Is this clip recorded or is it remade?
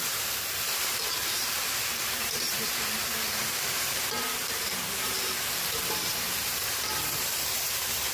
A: remade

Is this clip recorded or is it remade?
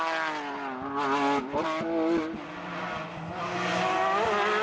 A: recorded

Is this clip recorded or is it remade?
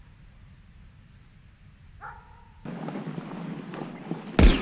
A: recorded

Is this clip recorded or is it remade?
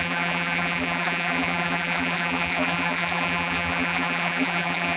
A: remade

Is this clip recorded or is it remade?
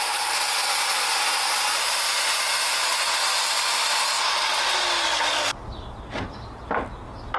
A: recorded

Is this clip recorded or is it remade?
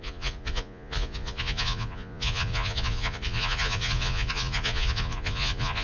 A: remade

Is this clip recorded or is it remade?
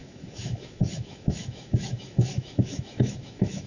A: remade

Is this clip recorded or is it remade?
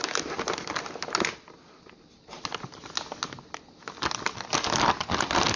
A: recorded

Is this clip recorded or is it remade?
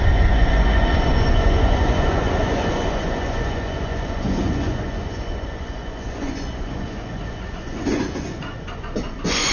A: remade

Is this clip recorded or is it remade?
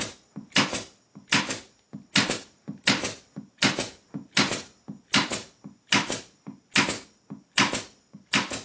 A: recorded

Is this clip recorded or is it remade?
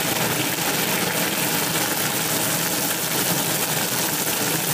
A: recorded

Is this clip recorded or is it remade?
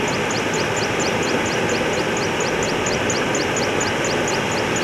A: recorded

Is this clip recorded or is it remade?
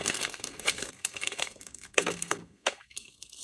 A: remade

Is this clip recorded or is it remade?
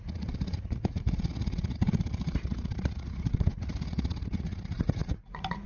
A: remade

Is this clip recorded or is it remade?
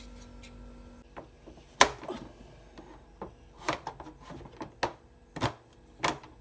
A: recorded